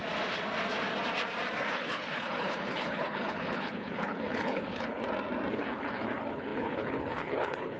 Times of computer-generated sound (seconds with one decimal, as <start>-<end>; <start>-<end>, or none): 1.7-5.0; 5.5-7.8